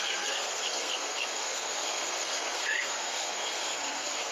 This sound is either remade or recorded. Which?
remade